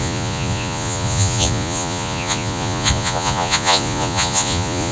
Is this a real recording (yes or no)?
no